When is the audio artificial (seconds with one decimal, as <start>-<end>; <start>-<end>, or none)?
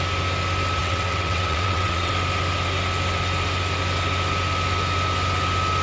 0.8-2.1